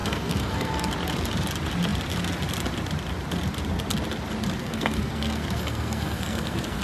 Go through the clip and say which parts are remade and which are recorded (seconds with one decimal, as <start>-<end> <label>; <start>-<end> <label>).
0.0-0.9 remade; 0.9-4.6 recorded; 4.6-6.8 remade